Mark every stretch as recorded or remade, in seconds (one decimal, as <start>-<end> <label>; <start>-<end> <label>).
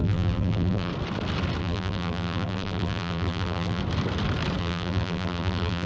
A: 0.0-0.9 remade; 0.9-1.6 recorded; 1.6-3.8 remade; 3.8-4.6 recorded; 4.6-5.9 remade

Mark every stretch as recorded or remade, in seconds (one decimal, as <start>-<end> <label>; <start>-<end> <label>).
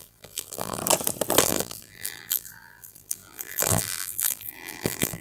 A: 0.0-0.8 remade; 0.8-1.4 recorded; 1.4-5.2 remade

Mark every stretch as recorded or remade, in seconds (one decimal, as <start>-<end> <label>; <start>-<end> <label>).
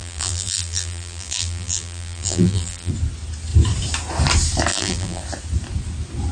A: 0.0-2.9 remade; 2.9-4.7 recorded; 4.7-5.2 remade; 5.2-6.3 recorded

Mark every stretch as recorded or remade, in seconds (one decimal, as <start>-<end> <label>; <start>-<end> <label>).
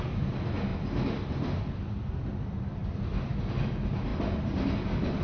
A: 0.0-0.7 recorded; 0.7-1.6 remade; 1.6-4.1 recorded; 4.1-5.2 remade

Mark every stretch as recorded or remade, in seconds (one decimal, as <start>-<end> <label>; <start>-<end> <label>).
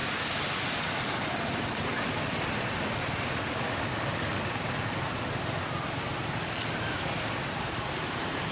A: 0.0-8.5 recorded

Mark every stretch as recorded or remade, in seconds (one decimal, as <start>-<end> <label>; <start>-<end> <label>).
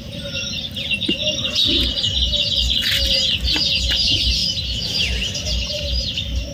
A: 0.0-6.5 recorded